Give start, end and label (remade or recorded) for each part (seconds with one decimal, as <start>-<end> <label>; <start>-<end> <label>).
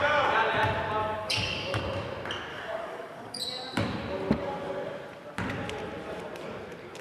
0.0-1.0 recorded; 1.0-1.8 remade; 1.8-2.5 recorded; 2.5-3.4 remade; 3.4-7.0 recorded